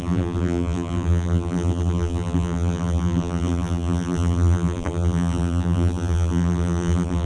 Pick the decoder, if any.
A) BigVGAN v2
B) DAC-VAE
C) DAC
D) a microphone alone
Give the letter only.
A